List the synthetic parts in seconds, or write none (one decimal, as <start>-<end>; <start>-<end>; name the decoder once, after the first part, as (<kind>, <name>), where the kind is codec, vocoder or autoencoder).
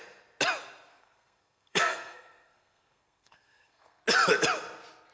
0.9-4.0 (codec, SNAC)